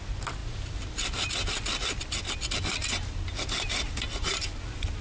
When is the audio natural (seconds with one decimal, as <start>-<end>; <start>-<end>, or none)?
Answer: 0.0-5.0